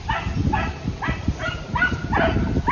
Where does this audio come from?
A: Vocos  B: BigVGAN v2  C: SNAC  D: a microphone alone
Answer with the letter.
D